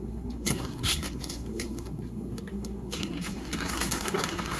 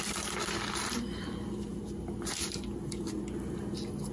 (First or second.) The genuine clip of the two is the second